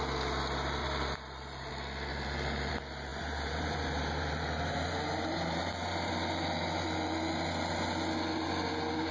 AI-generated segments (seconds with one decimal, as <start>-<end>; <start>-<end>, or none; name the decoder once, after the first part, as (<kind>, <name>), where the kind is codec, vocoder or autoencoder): 0.8-1.7 (vocoder, BigVGAN v2); 2.1-2.7; 3.1-6.1